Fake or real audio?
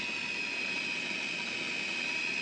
real